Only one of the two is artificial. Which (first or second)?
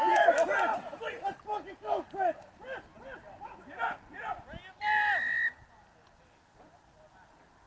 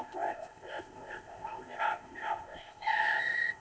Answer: second